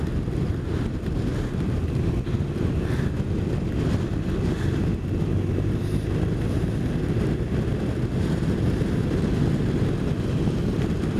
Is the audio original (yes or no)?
yes